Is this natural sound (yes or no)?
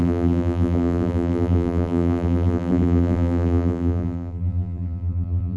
no